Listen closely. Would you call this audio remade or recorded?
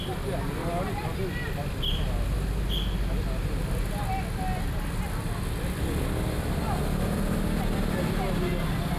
recorded